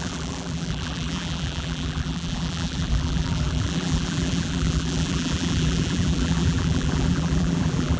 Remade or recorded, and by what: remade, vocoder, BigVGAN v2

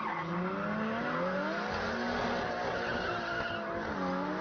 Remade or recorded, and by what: recorded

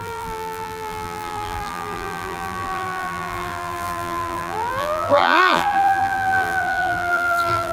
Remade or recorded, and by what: remade, vocoder, BigVGAN v2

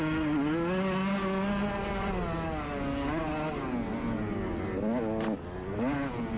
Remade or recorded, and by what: recorded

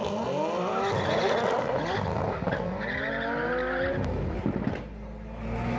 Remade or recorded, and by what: recorded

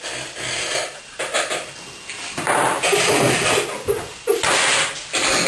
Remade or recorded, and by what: recorded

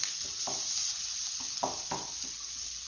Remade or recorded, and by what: recorded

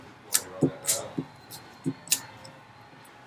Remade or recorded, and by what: recorded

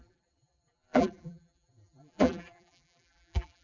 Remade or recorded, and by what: remade, vocoder, BigVGAN v2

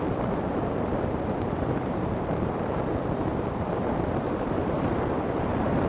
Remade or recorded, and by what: remade, vocoder, BigVGAN v2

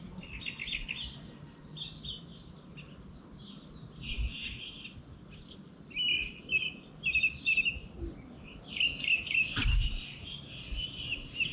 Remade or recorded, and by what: recorded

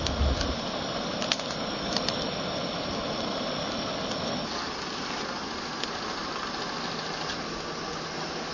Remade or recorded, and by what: recorded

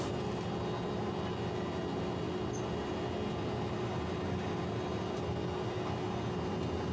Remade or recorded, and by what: recorded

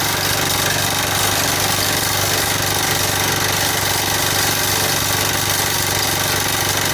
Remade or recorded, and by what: recorded